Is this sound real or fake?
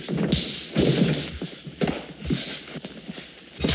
real